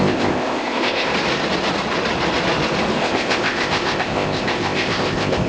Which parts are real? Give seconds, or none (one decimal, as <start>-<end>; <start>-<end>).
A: 1.1-3.0